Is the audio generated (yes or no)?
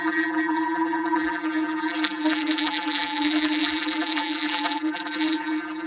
yes